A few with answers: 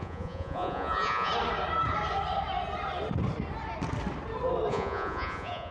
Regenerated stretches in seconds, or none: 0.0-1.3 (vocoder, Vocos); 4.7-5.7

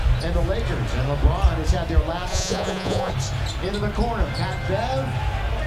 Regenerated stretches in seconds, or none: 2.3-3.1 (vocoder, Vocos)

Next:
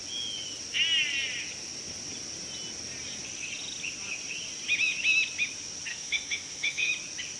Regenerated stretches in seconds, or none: 5.9-6.9 (autoencoder, DAC-VAE)